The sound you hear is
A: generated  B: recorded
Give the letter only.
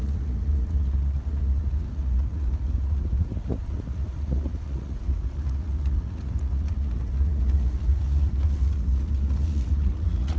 A